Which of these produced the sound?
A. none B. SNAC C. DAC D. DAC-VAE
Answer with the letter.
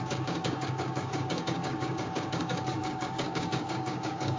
C